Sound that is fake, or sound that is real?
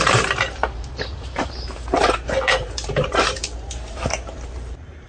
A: fake